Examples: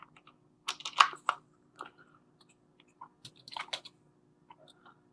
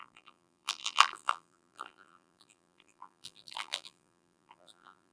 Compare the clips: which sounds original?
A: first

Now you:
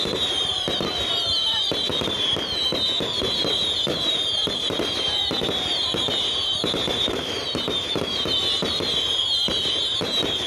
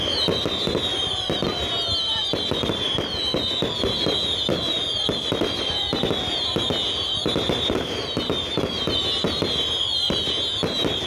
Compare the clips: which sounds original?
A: second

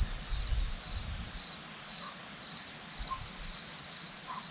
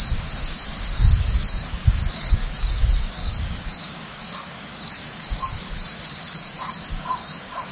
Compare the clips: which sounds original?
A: first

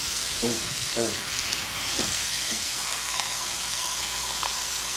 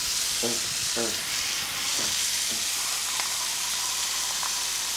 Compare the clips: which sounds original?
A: second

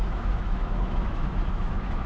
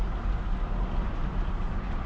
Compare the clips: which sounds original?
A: second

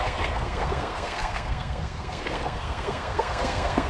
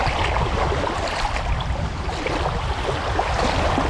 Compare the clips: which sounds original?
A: second